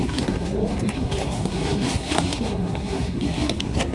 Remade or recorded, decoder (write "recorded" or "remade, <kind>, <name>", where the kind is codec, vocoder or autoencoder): remade, codec, SNAC